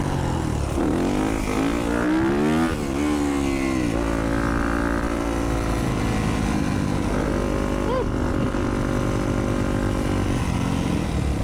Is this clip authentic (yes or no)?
yes